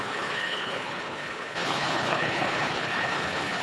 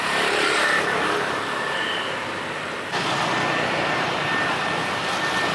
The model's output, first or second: first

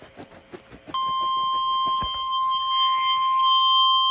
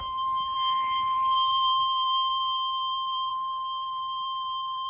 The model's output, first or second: second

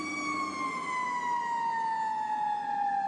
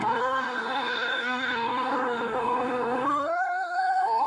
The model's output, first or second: second